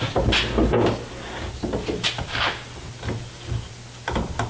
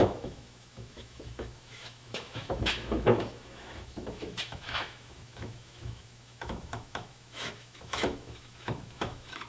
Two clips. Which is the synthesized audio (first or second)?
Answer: second